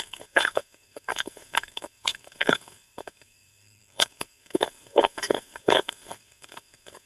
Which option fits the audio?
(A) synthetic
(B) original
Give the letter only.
A